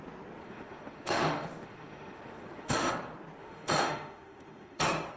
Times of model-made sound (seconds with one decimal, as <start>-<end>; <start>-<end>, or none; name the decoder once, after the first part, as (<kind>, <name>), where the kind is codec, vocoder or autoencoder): 0.4-2.9 (autoencoder, DAC-VAE); 3.4-4.8